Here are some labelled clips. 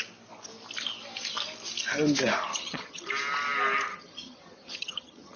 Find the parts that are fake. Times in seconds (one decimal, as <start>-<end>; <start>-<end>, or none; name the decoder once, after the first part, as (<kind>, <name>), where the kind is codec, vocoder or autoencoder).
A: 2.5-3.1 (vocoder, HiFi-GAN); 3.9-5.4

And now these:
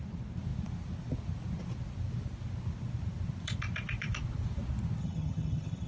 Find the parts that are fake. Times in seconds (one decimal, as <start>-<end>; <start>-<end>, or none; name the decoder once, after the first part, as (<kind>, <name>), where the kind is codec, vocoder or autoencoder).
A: 5.0-5.9 (vocoder, HiFi-GAN)

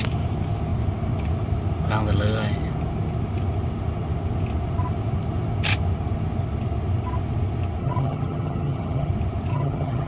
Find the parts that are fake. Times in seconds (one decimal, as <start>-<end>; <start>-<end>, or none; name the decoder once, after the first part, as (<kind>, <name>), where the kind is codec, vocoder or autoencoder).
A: 7.8-9.1 (vocoder, HiFi-GAN); 9.5-10.1

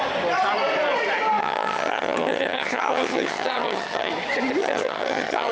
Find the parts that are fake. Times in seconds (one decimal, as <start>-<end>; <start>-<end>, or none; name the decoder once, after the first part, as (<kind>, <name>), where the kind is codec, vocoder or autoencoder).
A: 1.4-4.1 (vocoder, HiFi-GAN); 4.6-5.5

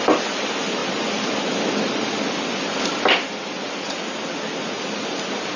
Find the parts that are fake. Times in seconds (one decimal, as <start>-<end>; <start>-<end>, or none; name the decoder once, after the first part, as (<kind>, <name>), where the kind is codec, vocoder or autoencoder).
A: none

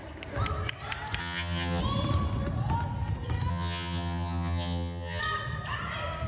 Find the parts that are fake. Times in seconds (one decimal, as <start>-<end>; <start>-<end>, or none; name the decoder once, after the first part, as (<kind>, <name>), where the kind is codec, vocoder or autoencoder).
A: 1.2-1.8 (vocoder, HiFi-GAN); 3.5-5.2